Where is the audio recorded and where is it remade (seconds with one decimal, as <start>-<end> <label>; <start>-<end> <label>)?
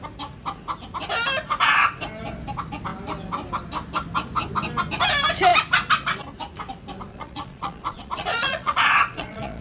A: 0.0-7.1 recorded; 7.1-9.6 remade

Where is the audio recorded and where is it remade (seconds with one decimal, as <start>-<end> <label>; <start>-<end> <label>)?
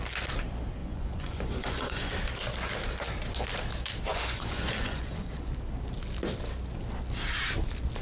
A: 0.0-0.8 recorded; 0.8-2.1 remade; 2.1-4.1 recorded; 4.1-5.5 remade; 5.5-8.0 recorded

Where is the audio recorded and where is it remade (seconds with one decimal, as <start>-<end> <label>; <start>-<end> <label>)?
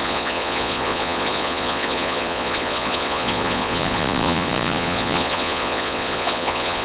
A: 0.0-6.8 remade